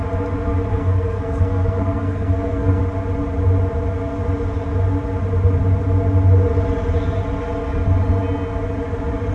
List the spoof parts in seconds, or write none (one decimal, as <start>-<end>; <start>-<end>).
0.7-2.8